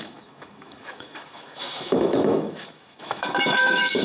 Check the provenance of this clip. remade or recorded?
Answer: remade